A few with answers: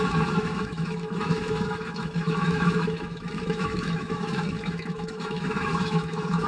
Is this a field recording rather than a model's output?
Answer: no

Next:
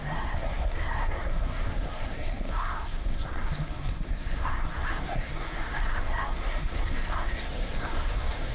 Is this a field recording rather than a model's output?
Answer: no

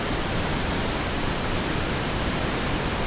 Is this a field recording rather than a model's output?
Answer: yes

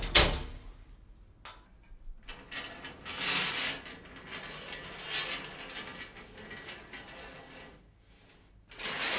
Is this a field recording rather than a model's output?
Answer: yes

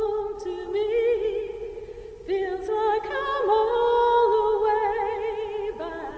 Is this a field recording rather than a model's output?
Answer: yes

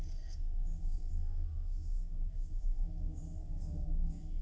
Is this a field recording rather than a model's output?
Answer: no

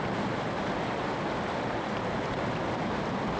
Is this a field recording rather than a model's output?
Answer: yes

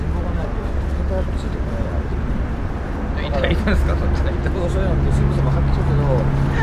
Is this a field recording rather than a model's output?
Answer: yes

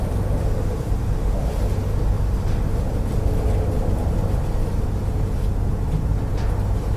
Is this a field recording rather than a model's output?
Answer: yes